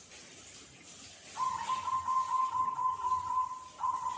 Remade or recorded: recorded